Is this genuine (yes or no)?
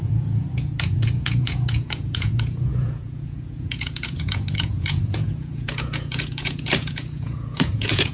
no